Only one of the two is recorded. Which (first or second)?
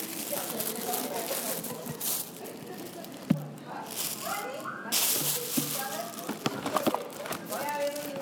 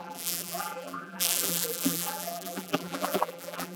first